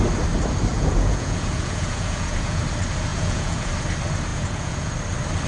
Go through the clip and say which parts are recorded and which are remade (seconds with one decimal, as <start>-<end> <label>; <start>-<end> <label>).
0.0-0.7 recorded; 0.7-2.6 remade; 2.6-3.1 recorded; 3.1-3.7 remade; 3.7-4.3 recorded; 4.3-4.9 remade; 4.9-5.5 recorded